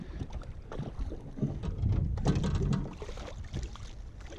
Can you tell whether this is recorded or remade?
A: recorded